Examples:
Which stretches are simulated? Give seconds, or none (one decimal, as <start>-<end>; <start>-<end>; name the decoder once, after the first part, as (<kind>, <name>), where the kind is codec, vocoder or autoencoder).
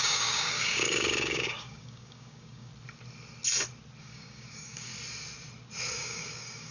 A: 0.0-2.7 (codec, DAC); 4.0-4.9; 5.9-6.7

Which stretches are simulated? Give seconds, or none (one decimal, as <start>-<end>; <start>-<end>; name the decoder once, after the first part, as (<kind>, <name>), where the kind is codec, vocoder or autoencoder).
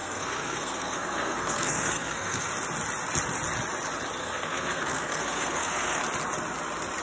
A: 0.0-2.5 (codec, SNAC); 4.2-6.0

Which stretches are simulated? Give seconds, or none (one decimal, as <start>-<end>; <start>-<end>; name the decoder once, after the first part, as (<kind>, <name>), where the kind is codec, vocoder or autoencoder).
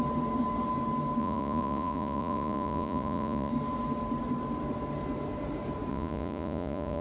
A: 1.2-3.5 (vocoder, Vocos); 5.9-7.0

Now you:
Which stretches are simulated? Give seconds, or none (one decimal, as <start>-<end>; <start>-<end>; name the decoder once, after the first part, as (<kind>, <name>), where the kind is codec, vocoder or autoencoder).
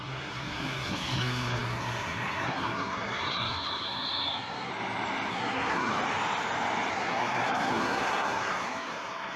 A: 0.0-4.7 (codec, SNAC); 5.3-5.9; 6.9-9.4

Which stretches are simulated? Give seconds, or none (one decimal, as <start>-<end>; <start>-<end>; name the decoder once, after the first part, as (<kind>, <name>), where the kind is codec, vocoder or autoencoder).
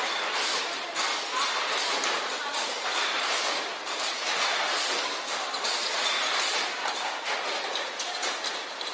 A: none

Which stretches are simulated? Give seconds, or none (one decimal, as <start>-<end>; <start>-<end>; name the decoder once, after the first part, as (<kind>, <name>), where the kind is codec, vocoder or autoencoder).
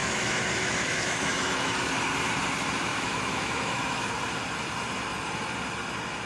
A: 0.0-1.9 (autoencoder, DAC-VAE); 2.9-4.1